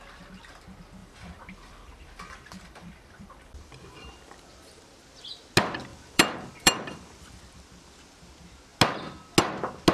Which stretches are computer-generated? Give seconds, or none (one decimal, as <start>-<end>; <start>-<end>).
1.0-4.8; 5.9-7.4